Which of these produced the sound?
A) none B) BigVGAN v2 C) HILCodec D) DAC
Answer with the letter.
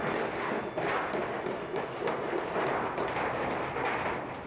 A